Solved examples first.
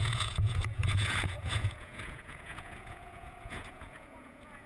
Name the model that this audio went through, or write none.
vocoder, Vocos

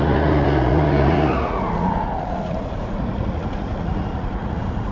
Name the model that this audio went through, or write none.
vocoder, Vocos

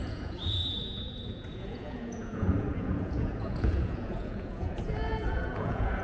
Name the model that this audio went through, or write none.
vocoder, Vocos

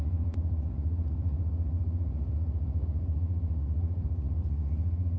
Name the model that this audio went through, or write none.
vocoder, Vocos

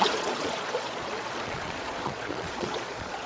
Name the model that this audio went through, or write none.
vocoder, Vocos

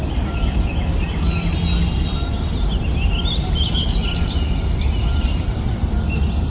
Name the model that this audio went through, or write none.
none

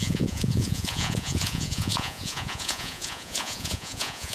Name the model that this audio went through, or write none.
vocoder, Vocos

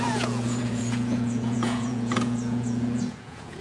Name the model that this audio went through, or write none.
vocoder, Vocos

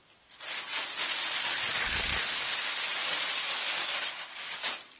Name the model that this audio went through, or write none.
none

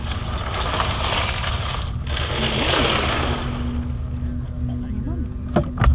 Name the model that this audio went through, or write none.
none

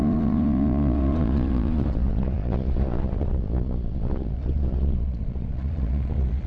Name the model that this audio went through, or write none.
vocoder, Vocos